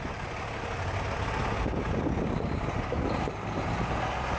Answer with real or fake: real